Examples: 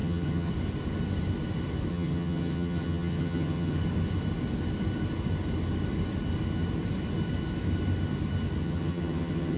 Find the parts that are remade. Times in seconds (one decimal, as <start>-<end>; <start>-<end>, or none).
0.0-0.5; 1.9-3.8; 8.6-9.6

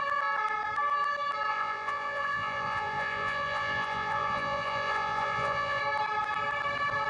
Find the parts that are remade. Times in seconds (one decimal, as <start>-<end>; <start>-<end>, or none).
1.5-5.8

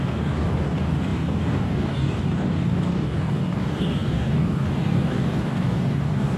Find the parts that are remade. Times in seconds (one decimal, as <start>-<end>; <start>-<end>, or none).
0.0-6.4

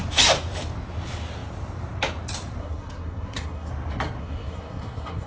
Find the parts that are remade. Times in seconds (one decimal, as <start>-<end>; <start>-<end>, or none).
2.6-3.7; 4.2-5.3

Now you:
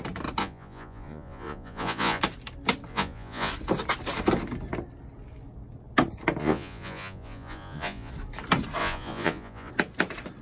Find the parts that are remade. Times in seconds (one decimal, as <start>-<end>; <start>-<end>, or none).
0.4-2.2; 2.9-3.5; 6.4-8.1; 8.8-9.7

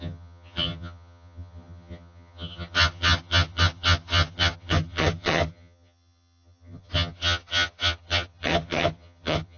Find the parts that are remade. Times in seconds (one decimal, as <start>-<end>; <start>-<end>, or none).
0.0-9.6